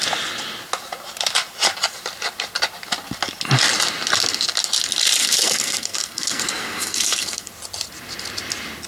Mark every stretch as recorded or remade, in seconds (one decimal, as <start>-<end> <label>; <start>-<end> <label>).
0.0-5.2 recorded; 5.2-7.5 remade; 7.5-8.9 recorded